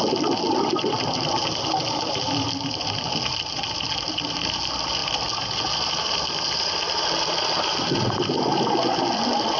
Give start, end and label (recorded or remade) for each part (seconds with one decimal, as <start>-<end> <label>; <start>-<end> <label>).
0.0-9.6 recorded